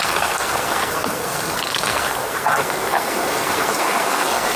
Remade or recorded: remade